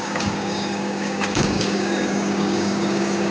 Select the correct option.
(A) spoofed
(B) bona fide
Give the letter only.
A